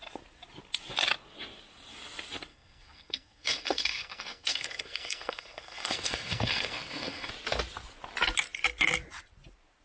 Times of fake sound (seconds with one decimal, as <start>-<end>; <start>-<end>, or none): 2.5-7.3